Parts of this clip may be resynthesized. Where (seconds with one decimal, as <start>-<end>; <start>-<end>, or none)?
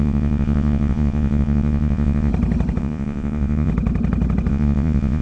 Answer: 0.0-2.3; 2.8-3.7; 4.5-5.2